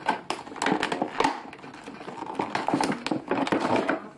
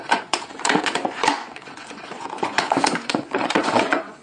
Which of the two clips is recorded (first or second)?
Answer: first